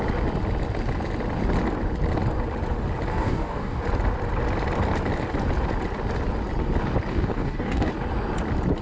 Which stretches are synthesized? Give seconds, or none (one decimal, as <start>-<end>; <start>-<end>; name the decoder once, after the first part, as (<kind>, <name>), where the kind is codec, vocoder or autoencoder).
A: 3.1-3.8 (codec, DAC); 7.1-7.9